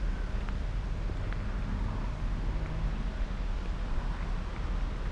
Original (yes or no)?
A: yes